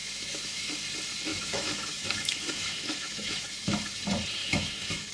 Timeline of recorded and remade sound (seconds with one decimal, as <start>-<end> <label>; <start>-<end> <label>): 0.0-0.7 remade; 0.7-1.3 recorded; 1.3-4.0 remade; 4.0-4.4 recorded; 4.4-5.1 remade

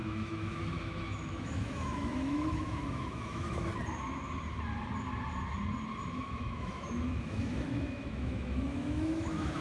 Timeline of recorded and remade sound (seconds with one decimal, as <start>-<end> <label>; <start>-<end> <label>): 0.0-3.7 remade; 3.7-6.1 recorded; 6.1-9.6 remade

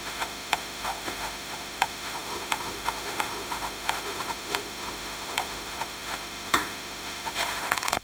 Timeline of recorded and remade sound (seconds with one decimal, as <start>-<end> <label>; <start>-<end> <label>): 0.0-8.0 remade

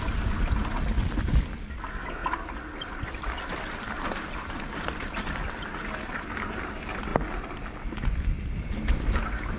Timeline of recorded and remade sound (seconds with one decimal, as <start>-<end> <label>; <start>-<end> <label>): 0.0-9.6 recorded

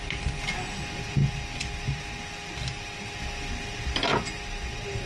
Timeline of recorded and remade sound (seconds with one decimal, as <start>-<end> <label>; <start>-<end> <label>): 0.0-5.1 recorded

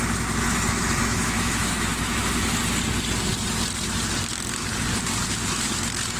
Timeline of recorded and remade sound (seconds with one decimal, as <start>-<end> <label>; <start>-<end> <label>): 0.0-1.0 recorded; 1.0-2.6 remade; 2.6-6.2 recorded

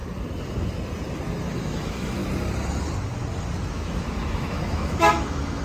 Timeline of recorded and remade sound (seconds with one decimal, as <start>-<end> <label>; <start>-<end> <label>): 0.0-1.5 recorded; 1.5-2.2 remade; 2.2-3.7 recorded; 3.7-5.6 remade

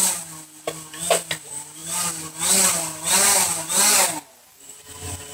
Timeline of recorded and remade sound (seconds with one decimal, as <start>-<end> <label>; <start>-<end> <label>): 0.0-5.3 recorded